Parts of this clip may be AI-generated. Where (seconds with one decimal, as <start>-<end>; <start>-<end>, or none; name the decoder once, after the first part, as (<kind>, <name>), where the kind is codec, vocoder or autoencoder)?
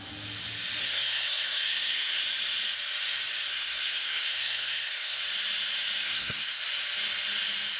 0.8-2.2 (codec, SNAC); 3.5-5.2; 6.0-6.6